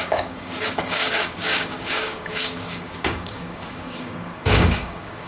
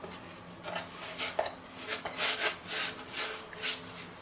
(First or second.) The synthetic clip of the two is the first